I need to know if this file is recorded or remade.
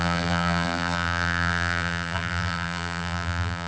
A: remade